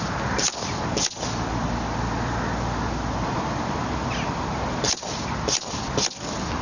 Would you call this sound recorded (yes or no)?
yes